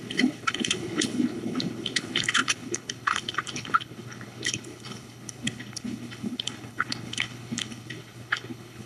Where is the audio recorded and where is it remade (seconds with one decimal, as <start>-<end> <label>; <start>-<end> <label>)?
0.0-8.9 remade